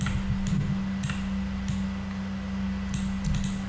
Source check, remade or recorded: recorded